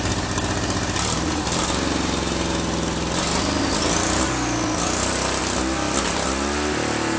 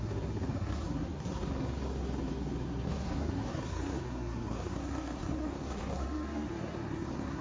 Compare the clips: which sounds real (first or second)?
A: first